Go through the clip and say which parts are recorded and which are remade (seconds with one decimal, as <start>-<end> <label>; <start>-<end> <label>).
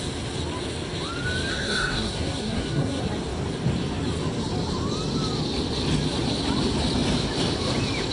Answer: 0.0-1.5 recorded; 1.5-3.0 remade; 3.0-8.1 recorded